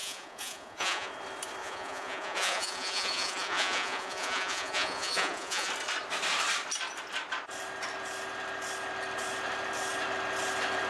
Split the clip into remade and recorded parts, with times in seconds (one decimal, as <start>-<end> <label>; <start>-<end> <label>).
0.0-1.1 remade; 1.1-1.6 recorded; 1.6-5.7 remade; 5.7-10.9 recorded